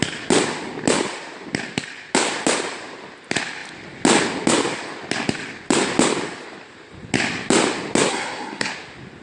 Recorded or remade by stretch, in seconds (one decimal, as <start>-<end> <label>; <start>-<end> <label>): 0.0-8.1 recorded; 8.1-8.7 remade; 8.7-9.2 recorded